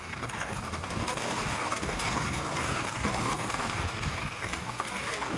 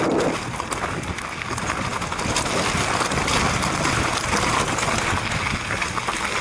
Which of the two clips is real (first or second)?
second